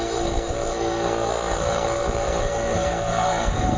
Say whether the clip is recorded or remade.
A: remade